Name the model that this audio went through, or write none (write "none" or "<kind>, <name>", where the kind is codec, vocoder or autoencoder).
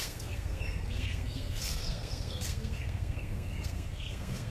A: codec, SNAC